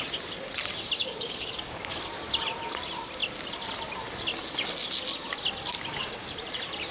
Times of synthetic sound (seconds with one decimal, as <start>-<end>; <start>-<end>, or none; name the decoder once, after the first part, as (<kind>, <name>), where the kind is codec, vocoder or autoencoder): 1.0-2.0 (codec, DAC)